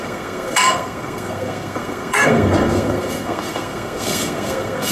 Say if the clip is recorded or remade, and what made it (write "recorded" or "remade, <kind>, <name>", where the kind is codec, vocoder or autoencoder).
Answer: remade, codec, SNAC